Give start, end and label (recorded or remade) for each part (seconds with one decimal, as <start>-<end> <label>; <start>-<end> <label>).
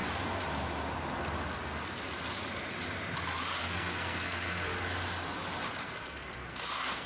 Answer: 0.0-3.6 recorded; 3.6-4.7 remade; 4.7-5.7 recorded; 5.7-7.1 remade